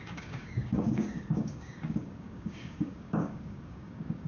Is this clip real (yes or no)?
no